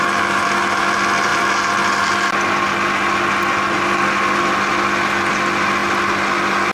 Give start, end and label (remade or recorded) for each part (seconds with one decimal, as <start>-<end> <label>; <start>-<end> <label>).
0.0-6.7 recorded